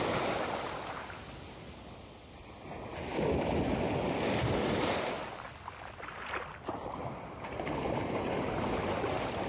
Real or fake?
real